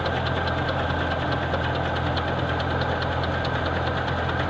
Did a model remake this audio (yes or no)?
no